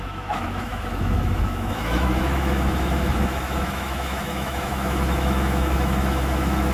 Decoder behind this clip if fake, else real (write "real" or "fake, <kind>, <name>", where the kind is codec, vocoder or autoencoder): fake, autoencoder, DAC-VAE